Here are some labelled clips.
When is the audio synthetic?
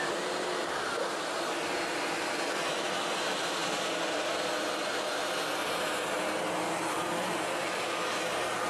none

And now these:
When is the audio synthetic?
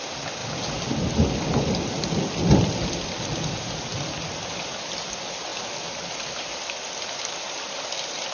none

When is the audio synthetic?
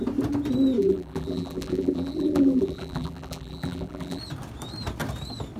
0.8-4.2 (vocoder, BigVGAN v2)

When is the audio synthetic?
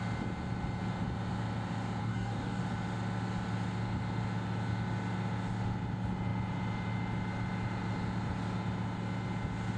2.0-2.6 (codec, DAC)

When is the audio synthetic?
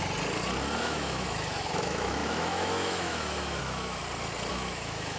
0.8-4.0 (autoencoder, DAC-VAE); 4.5-5.2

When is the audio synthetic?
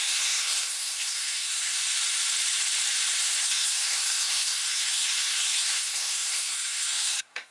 0.0-1.7 (codec, SNAC); 3.2-7.5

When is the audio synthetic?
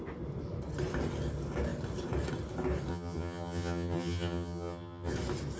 2.9-5.1 (vocoder, HiFi-GAN)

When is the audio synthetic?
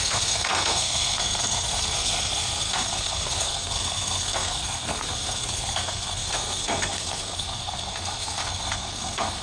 0.0-9.4 (codec, SNAC)